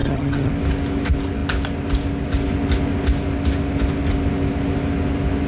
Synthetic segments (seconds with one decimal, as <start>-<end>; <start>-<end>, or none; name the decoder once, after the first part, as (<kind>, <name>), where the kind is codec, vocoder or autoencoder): 0.0-0.5 (vocoder, HiFi-GAN)